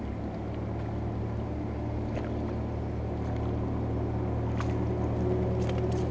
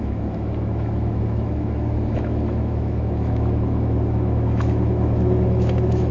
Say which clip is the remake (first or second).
second